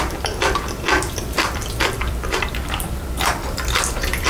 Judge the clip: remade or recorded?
remade